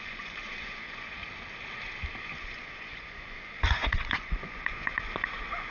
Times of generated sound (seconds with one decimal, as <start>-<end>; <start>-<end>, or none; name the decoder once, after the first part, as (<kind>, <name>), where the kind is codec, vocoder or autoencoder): 0.0-1.2 (vocoder, Vocos); 2.2-5.7